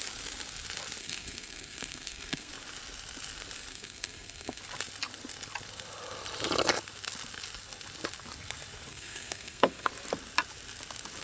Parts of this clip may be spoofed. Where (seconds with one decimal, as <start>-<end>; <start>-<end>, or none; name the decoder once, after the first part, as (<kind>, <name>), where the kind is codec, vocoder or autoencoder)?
1.0-2.5 (codec, SNAC); 3.7-4.6; 8.9-9.9